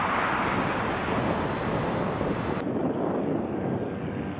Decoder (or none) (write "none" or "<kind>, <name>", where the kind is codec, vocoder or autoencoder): none